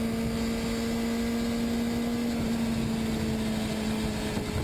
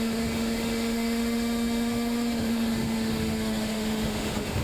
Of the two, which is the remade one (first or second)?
second